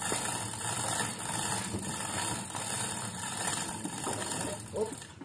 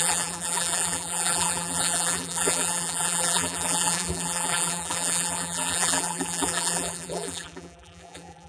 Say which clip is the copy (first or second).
second